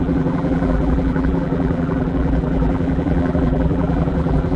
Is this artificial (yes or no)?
yes